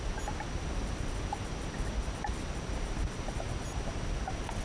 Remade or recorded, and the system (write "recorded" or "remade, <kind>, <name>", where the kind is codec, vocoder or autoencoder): recorded